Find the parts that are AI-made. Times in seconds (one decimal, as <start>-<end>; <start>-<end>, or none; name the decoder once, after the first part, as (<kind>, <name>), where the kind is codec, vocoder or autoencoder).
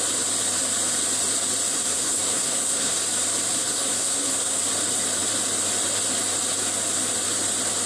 1.7-3.0 (codec, SNAC); 3.7-4.6